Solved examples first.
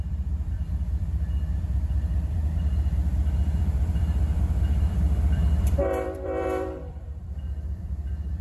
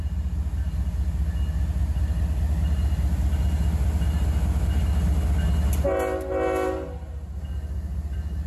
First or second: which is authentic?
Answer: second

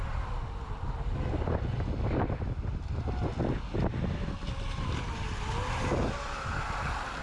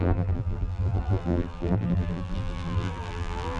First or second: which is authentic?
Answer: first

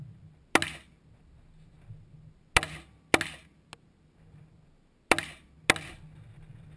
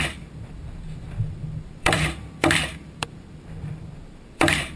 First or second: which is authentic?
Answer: first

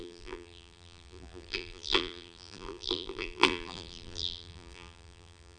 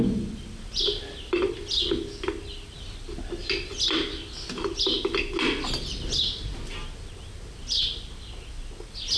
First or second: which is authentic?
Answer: second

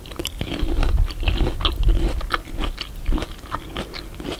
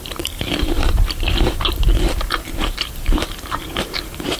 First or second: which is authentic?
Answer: first